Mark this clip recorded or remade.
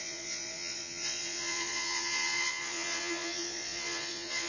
remade